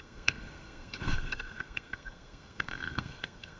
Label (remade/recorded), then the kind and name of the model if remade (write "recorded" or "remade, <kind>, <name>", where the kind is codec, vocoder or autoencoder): remade, codec, SNAC